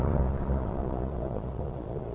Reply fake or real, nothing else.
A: fake